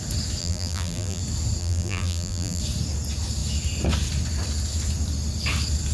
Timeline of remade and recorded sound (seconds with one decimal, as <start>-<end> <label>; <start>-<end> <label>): 0.0-0.4 recorded; 0.4-1.2 remade; 1.2-1.6 recorded; 1.6-2.6 remade; 2.6-5.9 recorded